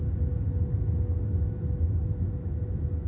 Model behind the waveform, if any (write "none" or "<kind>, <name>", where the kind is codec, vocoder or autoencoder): none